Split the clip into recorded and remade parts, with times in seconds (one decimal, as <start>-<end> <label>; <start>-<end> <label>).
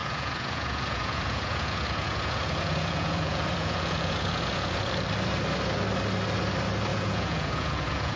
0.0-4.9 remade; 4.9-6.9 recorded; 6.9-8.2 remade